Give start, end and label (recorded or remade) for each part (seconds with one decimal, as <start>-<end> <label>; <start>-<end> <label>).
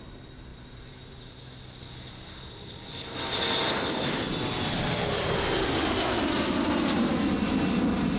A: 0.0-0.5 recorded; 0.5-1.4 remade; 1.4-8.2 recorded